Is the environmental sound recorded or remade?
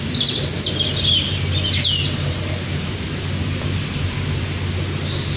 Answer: recorded